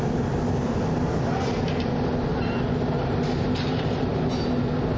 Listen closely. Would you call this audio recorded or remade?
recorded